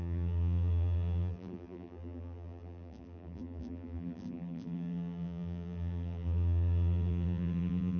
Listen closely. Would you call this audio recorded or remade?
remade